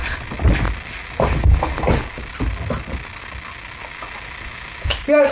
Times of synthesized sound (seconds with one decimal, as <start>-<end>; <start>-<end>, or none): none